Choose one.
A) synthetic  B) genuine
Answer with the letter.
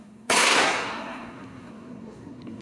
A